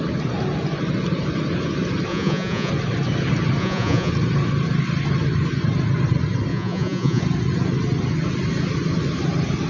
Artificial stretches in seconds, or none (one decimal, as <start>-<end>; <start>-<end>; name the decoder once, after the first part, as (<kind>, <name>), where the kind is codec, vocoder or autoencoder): 2.1-2.7 (vocoder, Vocos); 3.6-4.1; 6.5-7.2